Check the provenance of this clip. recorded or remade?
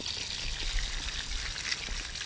recorded